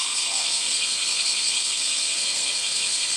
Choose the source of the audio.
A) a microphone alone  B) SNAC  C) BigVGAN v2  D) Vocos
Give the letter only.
B